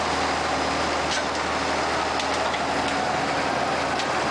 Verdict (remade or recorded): recorded